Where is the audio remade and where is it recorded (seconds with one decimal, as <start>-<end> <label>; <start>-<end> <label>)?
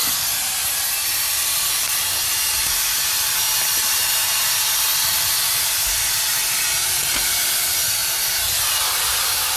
0.0-9.6 recorded